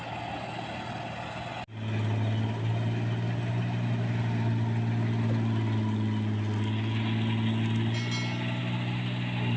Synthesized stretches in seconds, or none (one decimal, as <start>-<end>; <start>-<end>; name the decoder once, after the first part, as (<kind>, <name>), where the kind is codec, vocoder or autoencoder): none